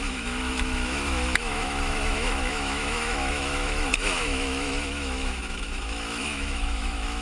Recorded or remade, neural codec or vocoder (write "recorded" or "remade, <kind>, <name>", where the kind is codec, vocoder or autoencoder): remade, autoencoder, DAC-VAE